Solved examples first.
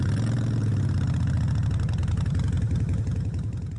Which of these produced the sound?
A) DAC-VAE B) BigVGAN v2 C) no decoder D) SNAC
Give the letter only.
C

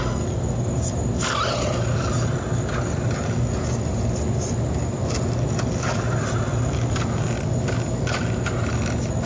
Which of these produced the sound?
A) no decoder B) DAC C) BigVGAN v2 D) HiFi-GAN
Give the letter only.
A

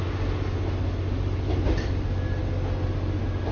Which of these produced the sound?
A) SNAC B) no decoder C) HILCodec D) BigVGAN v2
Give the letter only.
B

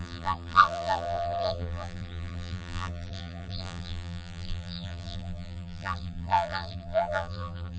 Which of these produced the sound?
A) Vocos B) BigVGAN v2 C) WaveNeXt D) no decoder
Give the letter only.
B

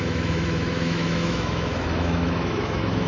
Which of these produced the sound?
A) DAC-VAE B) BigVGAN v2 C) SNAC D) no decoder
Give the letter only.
A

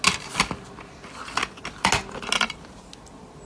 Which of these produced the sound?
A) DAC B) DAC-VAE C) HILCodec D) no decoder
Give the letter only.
D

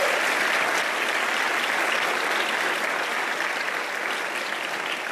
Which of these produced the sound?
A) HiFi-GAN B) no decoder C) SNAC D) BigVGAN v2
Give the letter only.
B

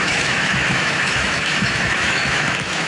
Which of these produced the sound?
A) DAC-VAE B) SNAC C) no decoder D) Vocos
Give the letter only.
A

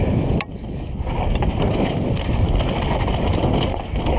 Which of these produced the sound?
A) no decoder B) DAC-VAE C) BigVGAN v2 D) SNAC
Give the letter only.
A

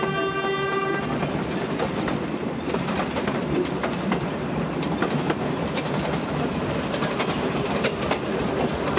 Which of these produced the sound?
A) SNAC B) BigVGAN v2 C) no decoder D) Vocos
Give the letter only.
C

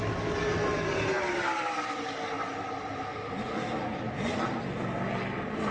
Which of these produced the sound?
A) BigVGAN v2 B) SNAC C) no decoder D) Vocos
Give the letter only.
C